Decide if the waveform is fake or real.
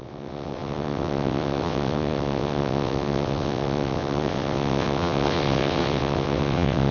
fake